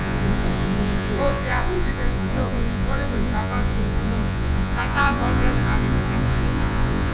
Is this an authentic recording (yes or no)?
no